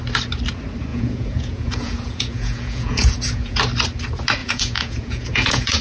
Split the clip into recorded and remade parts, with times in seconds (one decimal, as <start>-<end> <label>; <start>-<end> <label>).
0.0-0.9 recorded; 0.9-3.6 remade; 3.6-4.4 recorded; 4.4-5.8 remade

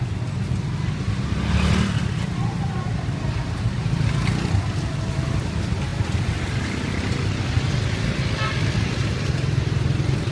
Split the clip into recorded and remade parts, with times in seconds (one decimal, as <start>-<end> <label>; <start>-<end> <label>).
0.0-10.3 recorded